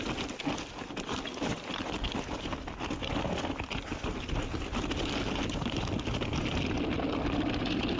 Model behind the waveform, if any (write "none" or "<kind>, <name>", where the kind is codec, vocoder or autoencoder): none